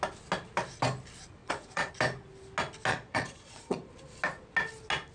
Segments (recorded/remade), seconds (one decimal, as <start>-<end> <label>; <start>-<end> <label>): 0.0-1.4 recorded; 1.4-1.9 remade; 1.9-2.9 recorded; 2.9-3.9 remade; 3.9-5.1 recorded